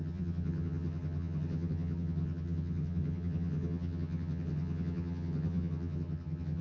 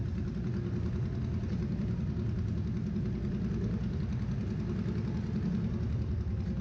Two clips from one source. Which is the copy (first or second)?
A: first